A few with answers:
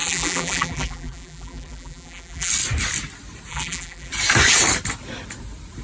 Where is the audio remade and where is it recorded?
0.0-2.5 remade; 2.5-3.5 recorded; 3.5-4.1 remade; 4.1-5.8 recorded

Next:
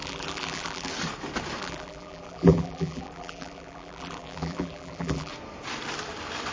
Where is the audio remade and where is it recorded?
0.0-0.9 remade; 0.9-1.6 recorded; 1.6-5.3 remade; 5.3-6.5 recorded